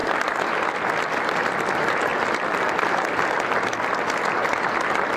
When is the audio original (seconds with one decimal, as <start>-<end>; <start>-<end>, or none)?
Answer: 0.0-0.7